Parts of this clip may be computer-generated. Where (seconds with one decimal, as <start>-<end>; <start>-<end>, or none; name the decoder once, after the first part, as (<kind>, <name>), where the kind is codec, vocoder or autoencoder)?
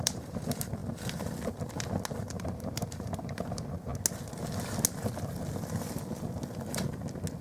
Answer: 0.0-0.8 (vocoder, BigVGAN v2); 2.2-3.9